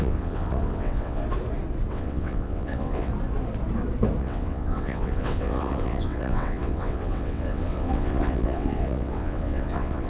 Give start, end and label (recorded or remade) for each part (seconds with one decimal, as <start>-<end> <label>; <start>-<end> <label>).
0.0-1.2 remade; 1.2-1.9 recorded; 1.9-3.1 remade; 3.1-4.2 recorded; 4.2-10.1 remade